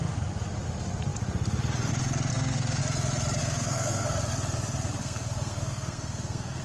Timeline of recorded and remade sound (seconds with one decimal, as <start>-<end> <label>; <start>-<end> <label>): 0.0-2.3 recorded; 2.3-2.8 remade; 2.8-3.4 recorded; 3.4-4.2 remade; 4.2-5.0 recorded; 5.0-6.6 remade